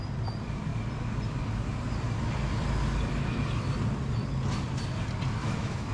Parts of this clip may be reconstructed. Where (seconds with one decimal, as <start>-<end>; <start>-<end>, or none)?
5.4-5.9